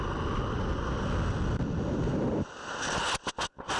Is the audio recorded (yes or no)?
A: yes